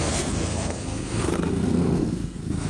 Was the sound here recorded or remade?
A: remade